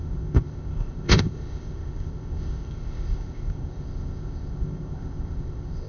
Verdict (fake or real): fake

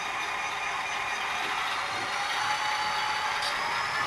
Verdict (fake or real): real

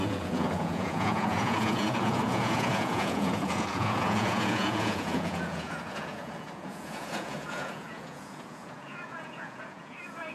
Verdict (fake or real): fake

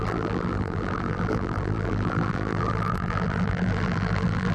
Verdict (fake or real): fake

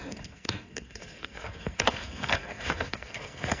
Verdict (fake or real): fake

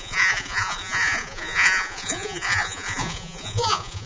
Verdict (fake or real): fake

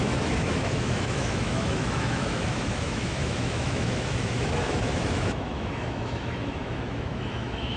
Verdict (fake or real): fake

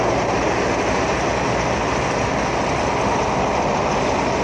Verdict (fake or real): real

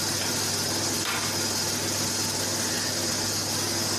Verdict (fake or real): real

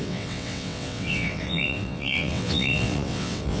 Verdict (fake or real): fake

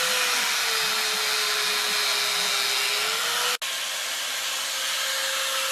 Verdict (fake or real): real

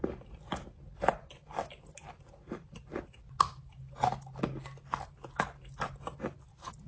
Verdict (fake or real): real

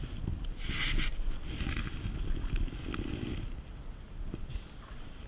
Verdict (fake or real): real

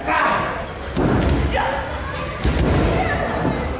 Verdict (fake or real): real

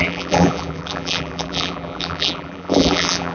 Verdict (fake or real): fake